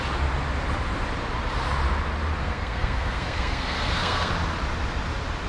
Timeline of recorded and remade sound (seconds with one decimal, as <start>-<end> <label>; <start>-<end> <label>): 0.0-2.4 recorded; 2.4-4.3 remade; 4.3-5.5 recorded